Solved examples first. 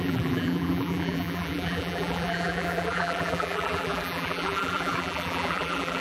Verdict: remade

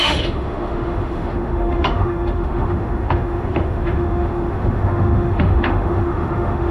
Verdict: remade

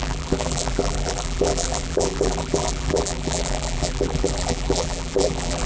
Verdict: remade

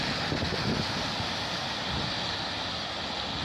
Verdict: recorded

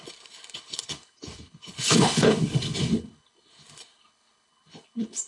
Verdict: remade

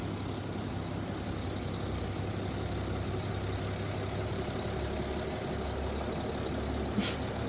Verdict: recorded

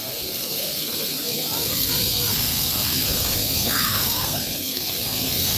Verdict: remade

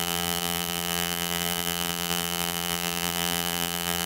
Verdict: remade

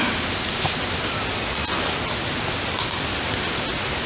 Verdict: recorded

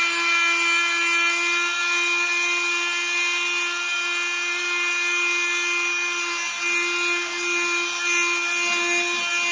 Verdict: recorded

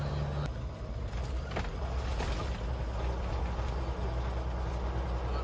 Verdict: recorded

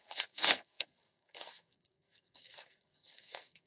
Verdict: remade